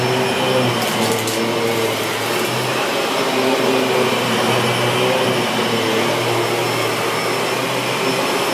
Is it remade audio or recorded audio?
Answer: recorded